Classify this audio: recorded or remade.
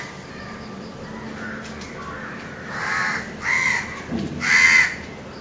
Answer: recorded